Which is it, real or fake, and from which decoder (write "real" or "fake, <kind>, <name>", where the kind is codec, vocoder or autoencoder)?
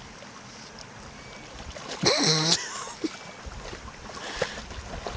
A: real